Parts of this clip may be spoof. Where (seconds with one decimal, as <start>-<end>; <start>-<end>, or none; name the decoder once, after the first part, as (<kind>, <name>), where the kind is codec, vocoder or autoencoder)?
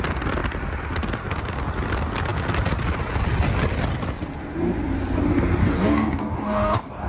5.6-7.1 (codec, DAC)